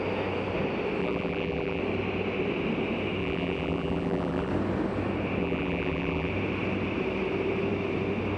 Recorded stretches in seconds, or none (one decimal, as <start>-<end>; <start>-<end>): 0.0-1.0; 1.8-3.2; 4.5-5.4; 6.3-8.4